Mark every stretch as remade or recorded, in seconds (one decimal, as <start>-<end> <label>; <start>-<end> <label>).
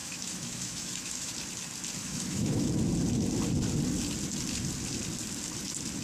0.0-1.3 remade; 1.3-2.0 recorded; 2.0-2.6 remade; 2.6-6.0 recorded